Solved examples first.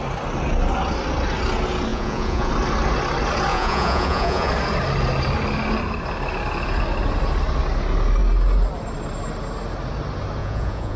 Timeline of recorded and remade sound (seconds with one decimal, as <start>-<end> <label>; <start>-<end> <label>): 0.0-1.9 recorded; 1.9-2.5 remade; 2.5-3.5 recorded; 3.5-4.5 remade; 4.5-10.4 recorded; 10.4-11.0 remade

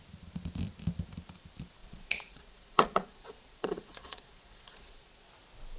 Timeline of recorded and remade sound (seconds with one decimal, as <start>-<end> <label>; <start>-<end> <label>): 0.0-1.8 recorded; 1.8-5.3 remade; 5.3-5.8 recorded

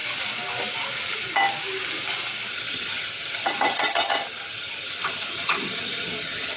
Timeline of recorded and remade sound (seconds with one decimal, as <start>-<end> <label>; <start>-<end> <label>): 0.0-2.5 recorded; 2.5-6.6 remade

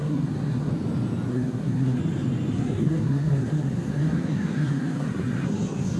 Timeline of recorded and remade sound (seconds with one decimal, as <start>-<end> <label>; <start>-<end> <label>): 0.0-0.7 remade; 0.7-1.3 recorded; 1.3-2.0 remade; 2.0-2.5 recorded; 2.5-6.0 remade

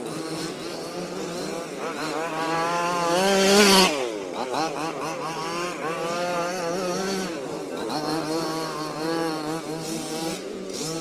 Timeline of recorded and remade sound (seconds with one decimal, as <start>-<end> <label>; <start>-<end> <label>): 0.0-11.0 recorded